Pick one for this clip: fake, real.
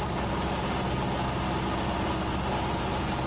real